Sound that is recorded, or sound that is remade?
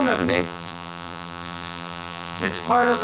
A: remade